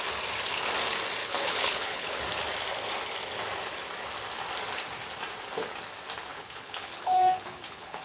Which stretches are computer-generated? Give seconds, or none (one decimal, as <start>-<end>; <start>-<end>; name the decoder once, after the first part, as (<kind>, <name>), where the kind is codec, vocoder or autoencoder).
1.2-2.2 (codec, HILCodec); 6.3-8.0